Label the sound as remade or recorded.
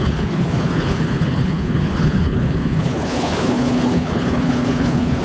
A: remade